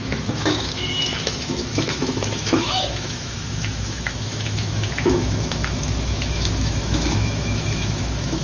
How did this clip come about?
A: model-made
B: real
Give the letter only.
A